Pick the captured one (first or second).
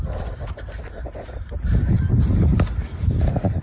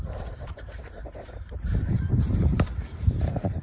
first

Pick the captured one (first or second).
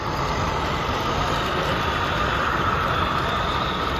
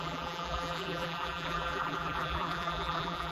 first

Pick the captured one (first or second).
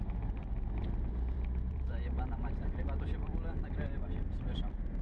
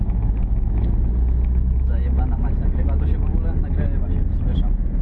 second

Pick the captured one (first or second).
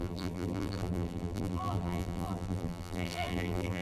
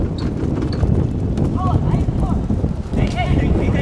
second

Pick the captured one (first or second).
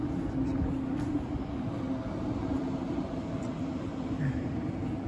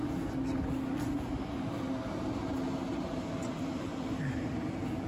second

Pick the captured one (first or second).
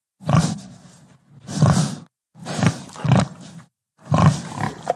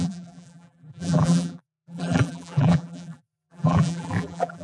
first